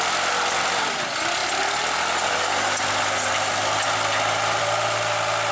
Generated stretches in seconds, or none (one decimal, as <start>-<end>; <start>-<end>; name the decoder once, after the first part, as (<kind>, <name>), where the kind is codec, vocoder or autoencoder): none